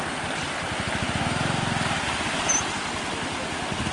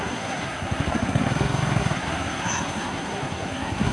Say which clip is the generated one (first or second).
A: second